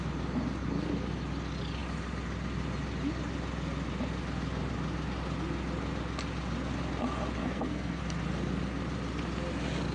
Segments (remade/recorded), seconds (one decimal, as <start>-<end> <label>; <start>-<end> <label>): 0.0-7.4 recorded; 7.4-8.0 remade; 8.0-9.9 recorded